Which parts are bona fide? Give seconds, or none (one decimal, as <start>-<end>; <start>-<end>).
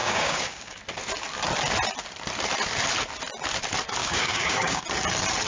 0.8-4.0; 4.8-5.5